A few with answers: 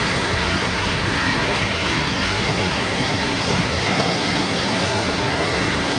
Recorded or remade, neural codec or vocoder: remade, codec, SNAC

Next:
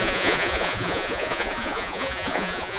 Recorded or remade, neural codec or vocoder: remade, vocoder, Vocos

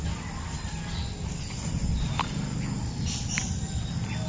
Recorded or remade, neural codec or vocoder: recorded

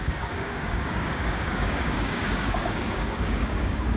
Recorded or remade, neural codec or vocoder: remade, codec, DAC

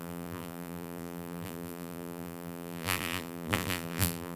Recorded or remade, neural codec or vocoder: remade, vocoder, BigVGAN v2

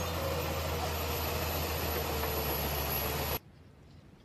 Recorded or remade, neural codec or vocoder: recorded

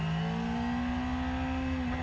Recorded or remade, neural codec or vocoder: recorded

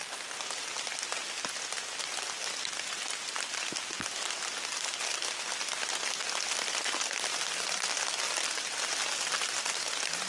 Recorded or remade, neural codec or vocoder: recorded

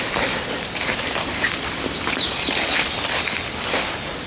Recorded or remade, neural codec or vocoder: recorded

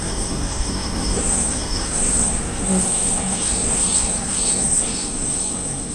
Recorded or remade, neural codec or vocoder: remade, codec, SNAC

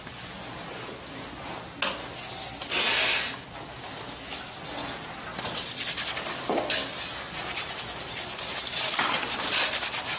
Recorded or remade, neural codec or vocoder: recorded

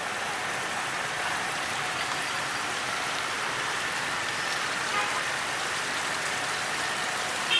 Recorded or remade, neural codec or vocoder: recorded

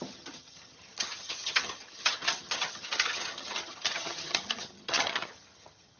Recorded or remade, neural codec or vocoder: remade, vocoder, HiFi-GAN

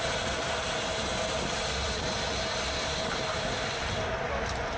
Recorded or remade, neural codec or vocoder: recorded